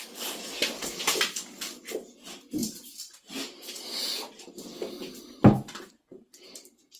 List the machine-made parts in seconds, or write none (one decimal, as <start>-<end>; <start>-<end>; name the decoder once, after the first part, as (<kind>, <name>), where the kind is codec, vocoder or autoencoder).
none